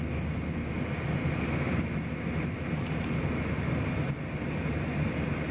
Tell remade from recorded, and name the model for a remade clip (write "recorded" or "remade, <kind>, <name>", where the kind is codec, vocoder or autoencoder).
recorded